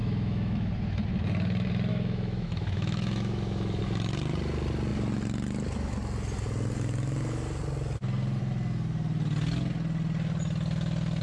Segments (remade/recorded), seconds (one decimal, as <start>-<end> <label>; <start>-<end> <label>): 0.0-0.7 remade; 0.7-1.9 recorded; 1.9-3.8 remade; 3.8-11.2 recorded